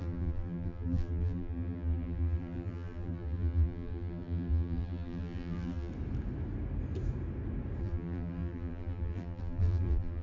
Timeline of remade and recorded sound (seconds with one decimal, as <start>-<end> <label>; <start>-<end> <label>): 0.0-5.9 remade; 5.9-7.8 recorded; 7.8-10.2 remade